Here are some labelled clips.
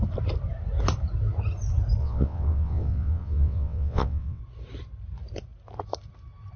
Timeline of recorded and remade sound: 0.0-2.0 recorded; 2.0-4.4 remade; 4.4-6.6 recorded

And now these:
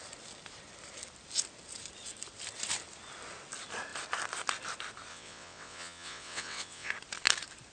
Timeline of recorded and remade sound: 0.0-5.1 recorded; 5.1-6.9 remade; 6.9-7.7 recorded

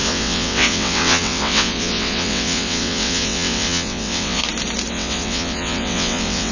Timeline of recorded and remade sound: 0.0-4.4 remade; 4.4-4.9 recorded; 4.9-6.5 remade

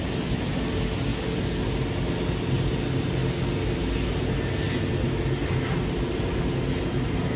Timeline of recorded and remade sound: 0.0-7.4 recorded

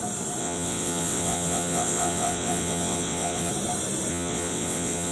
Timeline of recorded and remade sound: 0.0-0.4 recorded; 0.4-3.5 remade; 3.5-4.1 recorded; 4.1-5.1 remade

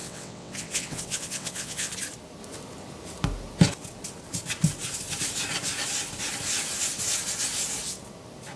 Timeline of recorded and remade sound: 0.0-1.9 remade; 1.9-8.6 recorded

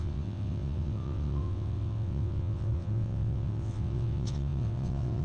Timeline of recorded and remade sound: 0.0-5.2 remade

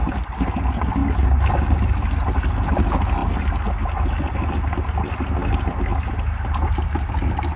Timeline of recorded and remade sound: 0.0-7.6 recorded